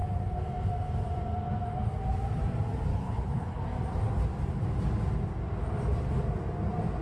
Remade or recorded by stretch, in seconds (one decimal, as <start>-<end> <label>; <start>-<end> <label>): 0.0-2.9 recorded; 2.9-3.6 remade; 3.6-7.0 recorded